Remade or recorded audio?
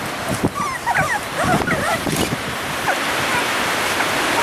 remade